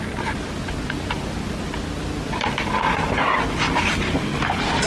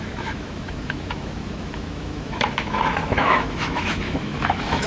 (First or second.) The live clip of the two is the first